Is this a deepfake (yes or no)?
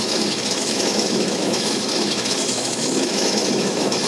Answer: yes